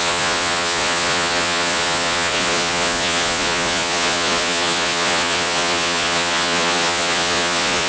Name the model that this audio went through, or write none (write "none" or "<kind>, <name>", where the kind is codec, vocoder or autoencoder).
vocoder, Vocos